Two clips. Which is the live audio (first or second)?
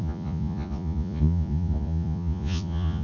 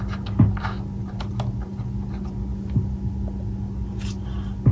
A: second